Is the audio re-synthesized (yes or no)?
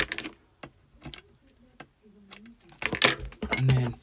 no